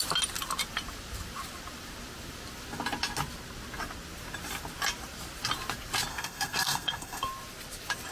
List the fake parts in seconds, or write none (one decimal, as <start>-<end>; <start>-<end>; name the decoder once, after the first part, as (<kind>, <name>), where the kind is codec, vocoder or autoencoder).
6.1-7.3 (codec, SNAC)